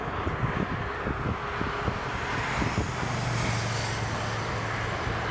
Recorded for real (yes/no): yes